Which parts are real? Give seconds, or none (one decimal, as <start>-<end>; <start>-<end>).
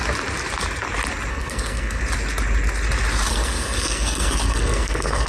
0.0-1.3; 2.0-3.3